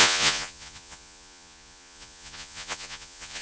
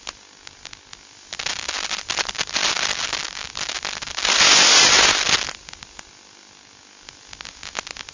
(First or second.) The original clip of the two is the second